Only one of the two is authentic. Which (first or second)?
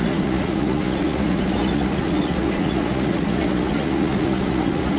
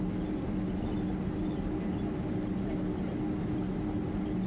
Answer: second